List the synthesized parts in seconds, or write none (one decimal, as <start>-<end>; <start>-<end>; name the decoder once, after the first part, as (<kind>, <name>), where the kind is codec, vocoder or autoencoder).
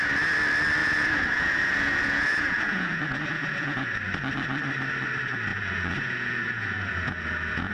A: 0.8-4.0 (vocoder, Vocos); 5.5-7.7